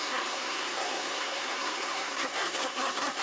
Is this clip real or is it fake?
fake